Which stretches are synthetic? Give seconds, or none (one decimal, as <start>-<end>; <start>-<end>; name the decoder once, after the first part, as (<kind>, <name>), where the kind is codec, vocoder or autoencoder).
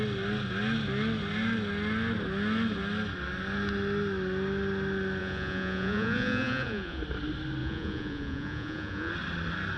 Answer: 5.2-7.0 (vocoder, Vocos); 7.6-9.1